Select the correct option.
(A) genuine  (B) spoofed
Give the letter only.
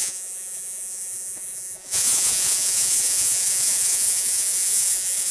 B